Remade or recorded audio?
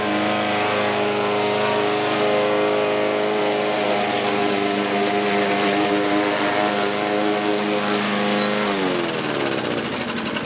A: recorded